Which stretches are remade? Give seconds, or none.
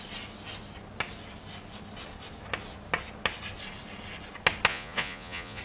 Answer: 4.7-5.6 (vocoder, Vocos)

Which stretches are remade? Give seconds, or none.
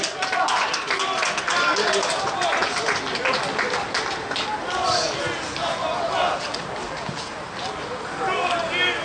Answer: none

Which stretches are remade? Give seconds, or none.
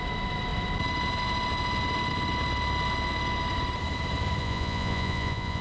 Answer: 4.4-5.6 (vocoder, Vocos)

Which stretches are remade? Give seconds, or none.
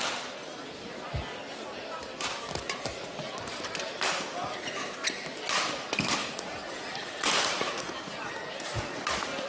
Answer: 6.2-7.9 (vocoder, Vocos)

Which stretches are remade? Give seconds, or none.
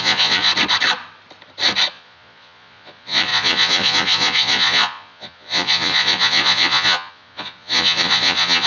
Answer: 0.0-0.5 (vocoder, Vocos); 1.9-8.7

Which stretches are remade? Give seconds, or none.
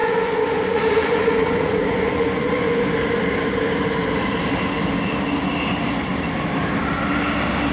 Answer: 0.0-2.8 (vocoder, Vocos)